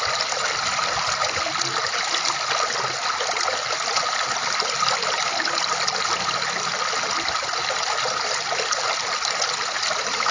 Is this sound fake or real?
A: real